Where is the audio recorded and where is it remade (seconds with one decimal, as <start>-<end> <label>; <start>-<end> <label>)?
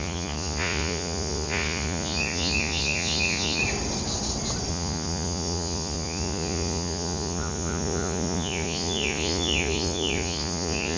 0.0-3.6 remade; 3.6-4.7 recorded; 4.7-11.0 remade